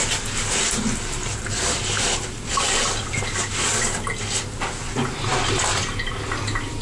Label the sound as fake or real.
real